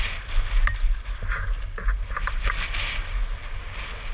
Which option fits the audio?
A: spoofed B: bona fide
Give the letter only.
B